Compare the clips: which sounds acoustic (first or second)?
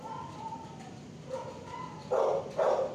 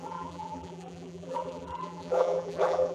first